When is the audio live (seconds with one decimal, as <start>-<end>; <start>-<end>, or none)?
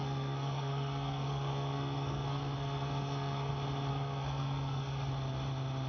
3.5-3.9; 5.1-5.9